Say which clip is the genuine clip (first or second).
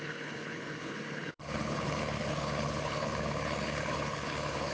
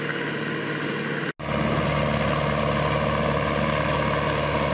second